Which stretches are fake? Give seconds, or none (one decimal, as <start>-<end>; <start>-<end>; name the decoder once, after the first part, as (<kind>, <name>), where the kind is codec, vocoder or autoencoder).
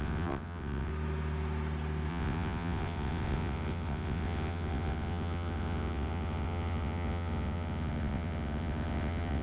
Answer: 0.0-0.9 (vocoder, WaveNeXt); 2.1-9.4